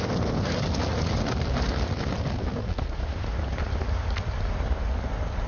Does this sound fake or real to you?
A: real